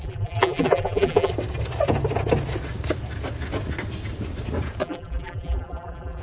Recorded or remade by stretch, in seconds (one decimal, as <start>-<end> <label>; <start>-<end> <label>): 0.0-1.3 remade; 1.3-4.8 recorded; 4.8-6.2 remade